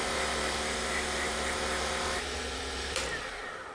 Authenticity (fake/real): fake